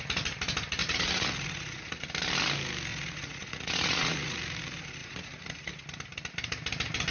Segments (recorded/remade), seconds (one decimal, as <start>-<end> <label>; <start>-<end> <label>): 0.0-0.8 recorded; 0.8-2.1 remade; 2.1-2.9 recorded; 2.9-4.6 remade; 4.6-5.0 recorded; 5.0-5.7 remade; 5.7-7.1 recorded